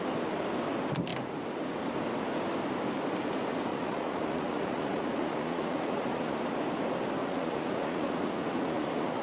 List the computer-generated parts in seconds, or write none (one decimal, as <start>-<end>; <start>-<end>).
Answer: 3.7-6.4; 7.2-9.2